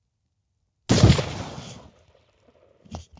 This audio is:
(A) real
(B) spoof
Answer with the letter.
A